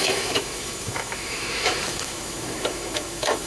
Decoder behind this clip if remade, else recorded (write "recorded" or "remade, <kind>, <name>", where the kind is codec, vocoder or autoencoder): remade, autoencoder, DAC-VAE